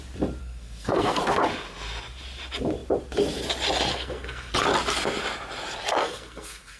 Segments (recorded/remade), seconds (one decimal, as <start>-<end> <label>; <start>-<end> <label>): 0.0-0.4 recorded; 0.4-1.2 remade; 1.2-3.9 recorded; 3.9-4.5 remade; 4.5-6.0 recorded; 6.0-6.8 remade